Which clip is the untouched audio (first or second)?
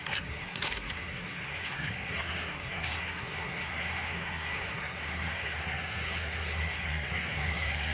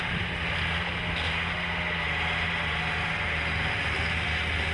second